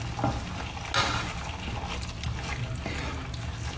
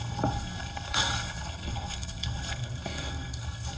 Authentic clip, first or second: first